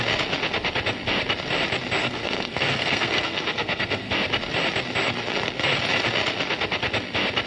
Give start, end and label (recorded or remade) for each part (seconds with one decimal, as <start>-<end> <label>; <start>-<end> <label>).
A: 0.0-2.0 recorded; 2.0-4.1 remade; 4.1-7.5 recorded